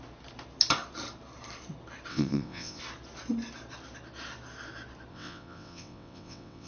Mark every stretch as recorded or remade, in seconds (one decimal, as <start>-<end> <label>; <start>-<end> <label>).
0.0-2.1 recorded; 2.1-2.8 remade; 2.8-5.1 recorded; 5.1-6.7 remade